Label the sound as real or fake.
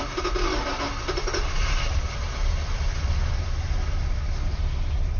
real